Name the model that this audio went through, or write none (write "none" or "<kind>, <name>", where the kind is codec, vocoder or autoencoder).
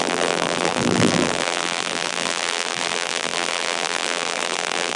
vocoder, BigVGAN v2